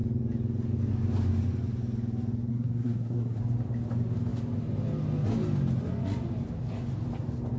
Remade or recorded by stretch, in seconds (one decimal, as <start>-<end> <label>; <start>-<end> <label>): 0.0-2.5 recorded; 2.5-3.4 remade; 3.4-7.6 recorded